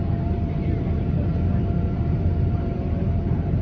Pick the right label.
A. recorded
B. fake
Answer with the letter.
B